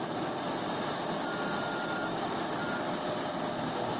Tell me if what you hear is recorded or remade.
recorded